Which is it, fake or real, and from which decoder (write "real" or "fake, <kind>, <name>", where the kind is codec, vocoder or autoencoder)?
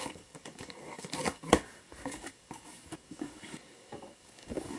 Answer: fake, codec, DAC